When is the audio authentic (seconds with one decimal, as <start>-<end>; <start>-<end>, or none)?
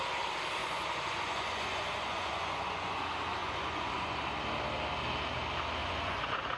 0.0-0.6; 3.0-3.4; 4.4-5.8